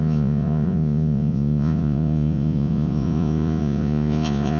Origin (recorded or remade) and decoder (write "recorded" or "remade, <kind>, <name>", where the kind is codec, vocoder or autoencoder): remade, vocoder, Vocos